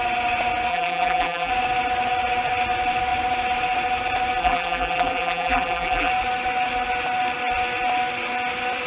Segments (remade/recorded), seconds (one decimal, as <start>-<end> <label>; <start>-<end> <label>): 0.0-0.7 recorded; 0.7-1.5 remade; 1.5-4.4 recorded; 4.4-6.1 remade; 6.1-8.9 recorded